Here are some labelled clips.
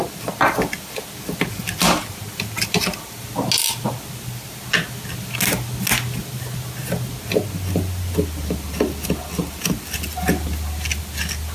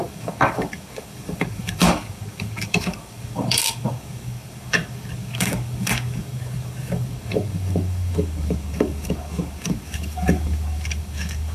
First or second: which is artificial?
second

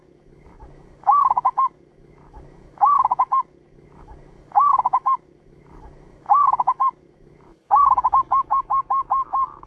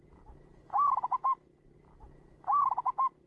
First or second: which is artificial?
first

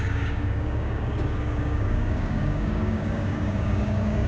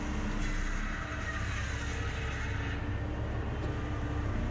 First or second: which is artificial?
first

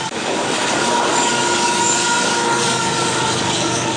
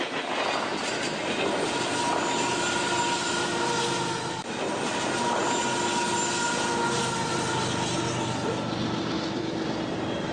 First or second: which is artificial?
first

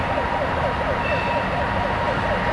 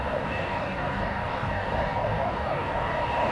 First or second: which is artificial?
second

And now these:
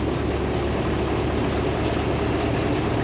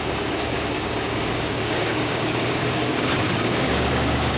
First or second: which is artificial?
second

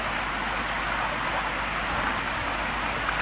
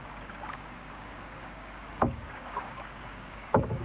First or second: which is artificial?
second